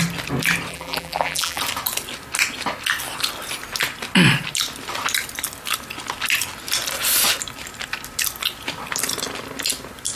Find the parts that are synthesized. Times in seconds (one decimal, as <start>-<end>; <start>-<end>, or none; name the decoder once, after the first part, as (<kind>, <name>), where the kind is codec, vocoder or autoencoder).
0.7-1.6 (vocoder, BigVGAN v2)